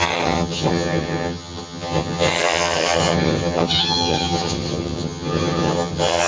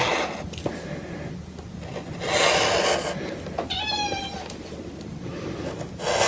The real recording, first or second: second